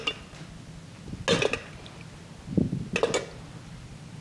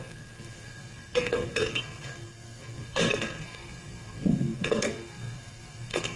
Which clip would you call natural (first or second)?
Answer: first